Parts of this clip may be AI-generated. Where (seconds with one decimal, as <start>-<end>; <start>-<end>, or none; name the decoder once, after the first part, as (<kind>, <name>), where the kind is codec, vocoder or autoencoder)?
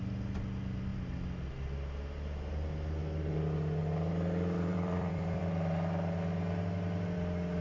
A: 4.7-5.4 (vocoder, BigVGAN v2)